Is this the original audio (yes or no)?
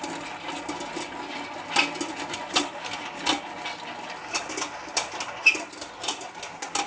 yes